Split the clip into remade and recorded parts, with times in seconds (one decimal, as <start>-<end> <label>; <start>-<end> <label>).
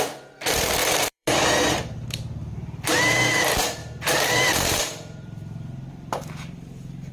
0.0-7.1 remade